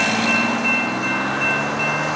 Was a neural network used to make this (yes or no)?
no